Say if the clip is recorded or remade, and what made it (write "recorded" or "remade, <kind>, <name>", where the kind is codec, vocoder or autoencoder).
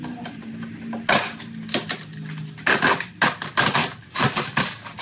recorded